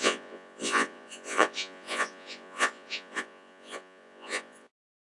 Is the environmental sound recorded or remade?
remade